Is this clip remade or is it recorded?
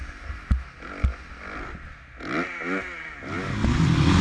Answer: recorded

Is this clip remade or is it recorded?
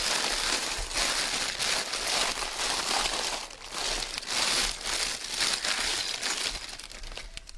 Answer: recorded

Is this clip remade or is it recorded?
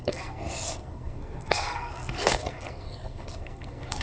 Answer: remade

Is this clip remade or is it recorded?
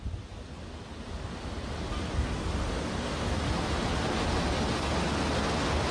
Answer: recorded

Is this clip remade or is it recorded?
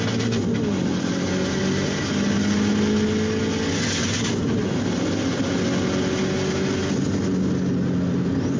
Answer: recorded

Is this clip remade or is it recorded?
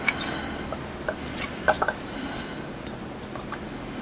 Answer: recorded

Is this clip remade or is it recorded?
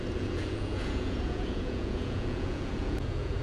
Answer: remade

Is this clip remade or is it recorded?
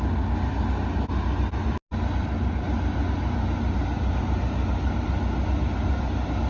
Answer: recorded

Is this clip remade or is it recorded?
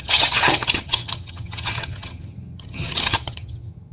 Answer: remade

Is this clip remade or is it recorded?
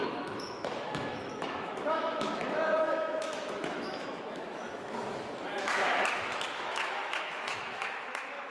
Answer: remade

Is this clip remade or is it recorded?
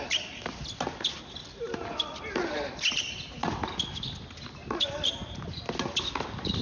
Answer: recorded